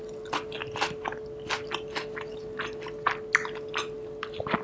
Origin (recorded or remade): recorded